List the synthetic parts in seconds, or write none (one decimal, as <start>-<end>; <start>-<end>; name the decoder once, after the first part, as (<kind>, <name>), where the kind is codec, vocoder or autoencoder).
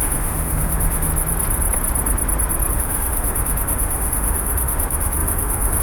0.0-1.1 (autoencoder, DAC-VAE); 2.7-5.8